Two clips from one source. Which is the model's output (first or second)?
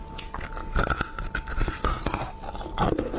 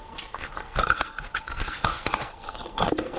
second